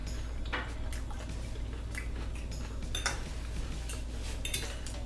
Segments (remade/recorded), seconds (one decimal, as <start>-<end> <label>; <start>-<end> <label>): 0.0-5.1 recorded